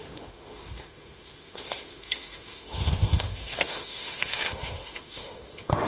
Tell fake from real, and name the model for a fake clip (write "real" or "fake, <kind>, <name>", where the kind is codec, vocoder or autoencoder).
fake, autoencoder, DAC-VAE